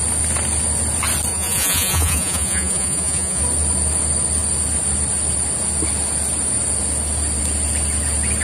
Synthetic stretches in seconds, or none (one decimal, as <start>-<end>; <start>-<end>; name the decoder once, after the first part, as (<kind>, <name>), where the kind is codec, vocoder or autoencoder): 1.3-3.4 (vocoder, Vocos)